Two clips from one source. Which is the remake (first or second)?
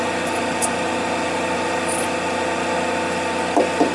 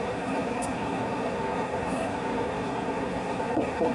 second